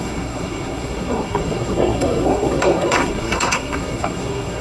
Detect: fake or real fake